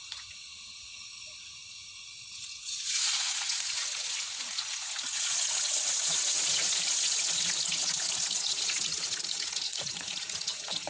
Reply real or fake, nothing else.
fake